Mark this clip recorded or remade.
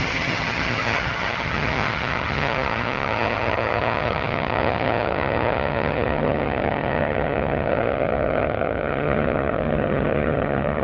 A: remade